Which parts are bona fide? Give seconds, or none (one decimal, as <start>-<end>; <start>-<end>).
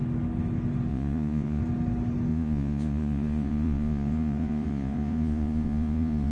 0.0-0.9; 1.6-2.3